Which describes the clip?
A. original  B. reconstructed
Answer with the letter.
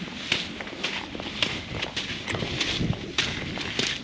A